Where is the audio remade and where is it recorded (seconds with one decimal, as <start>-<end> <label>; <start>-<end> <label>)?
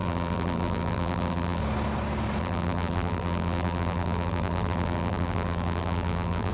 0.0-1.6 remade; 1.6-2.4 recorded; 2.4-6.5 remade